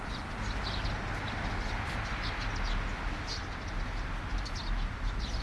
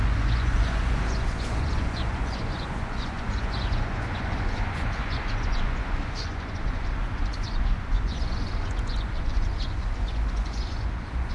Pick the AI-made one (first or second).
second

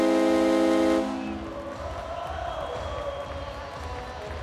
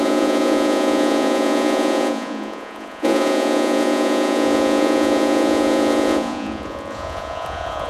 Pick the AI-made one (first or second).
second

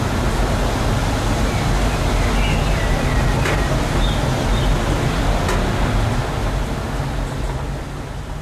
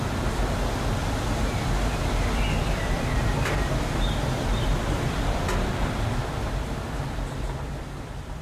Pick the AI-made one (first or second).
second